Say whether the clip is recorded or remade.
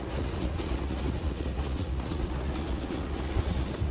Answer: remade